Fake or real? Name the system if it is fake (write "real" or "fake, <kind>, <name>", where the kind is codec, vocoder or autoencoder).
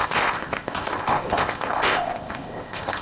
fake, codec, ZipCodec